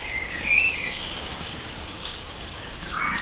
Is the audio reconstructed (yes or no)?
yes